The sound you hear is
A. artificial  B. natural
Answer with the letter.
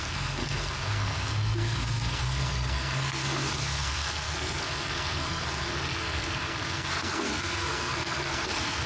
A